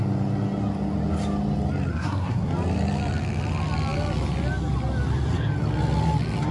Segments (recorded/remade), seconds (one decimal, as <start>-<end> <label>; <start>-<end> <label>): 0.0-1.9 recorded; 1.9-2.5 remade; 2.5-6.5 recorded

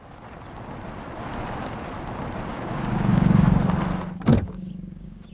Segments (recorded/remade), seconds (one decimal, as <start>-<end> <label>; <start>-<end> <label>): 0.0-2.5 recorded; 2.5-3.6 remade; 3.6-4.3 recorded; 4.3-5.3 remade

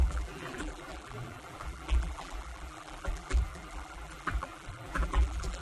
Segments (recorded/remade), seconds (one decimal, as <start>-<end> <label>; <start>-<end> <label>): 0.0-5.6 remade

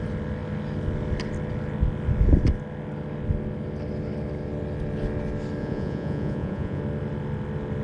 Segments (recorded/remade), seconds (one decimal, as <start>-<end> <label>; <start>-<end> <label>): 0.0-5.6 recorded; 5.6-6.8 remade; 6.8-7.8 recorded

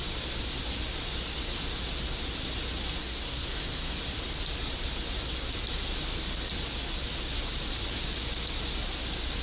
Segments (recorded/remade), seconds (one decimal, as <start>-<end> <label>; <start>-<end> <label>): 0.0-3.0 recorded; 3.0-4.0 remade; 4.0-9.4 recorded